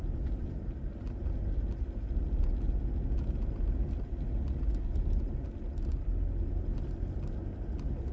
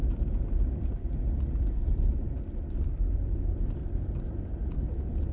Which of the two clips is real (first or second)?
first